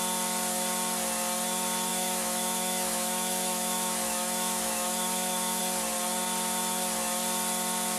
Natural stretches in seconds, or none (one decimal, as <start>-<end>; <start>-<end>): 0.0-1.9; 5.6-8.0